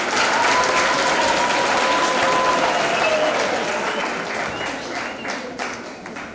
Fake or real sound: real